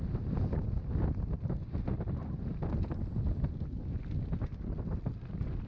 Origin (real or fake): real